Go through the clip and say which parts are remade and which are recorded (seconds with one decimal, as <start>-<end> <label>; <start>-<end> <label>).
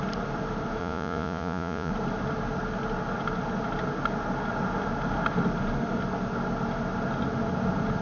0.0-0.8 recorded; 0.8-1.9 remade; 1.9-8.0 recorded